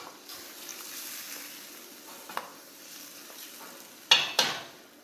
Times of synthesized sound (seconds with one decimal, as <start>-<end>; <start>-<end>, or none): 2.5-3.0